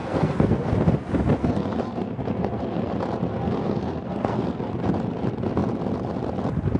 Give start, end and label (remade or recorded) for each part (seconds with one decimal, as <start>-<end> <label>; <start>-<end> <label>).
0.0-0.7 remade; 0.7-1.4 recorded; 1.4-2.9 remade; 2.9-3.3 recorded; 3.3-4.7 remade; 4.7-6.8 recorded